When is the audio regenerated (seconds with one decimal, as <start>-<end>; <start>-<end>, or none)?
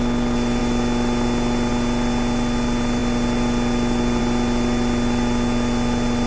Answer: none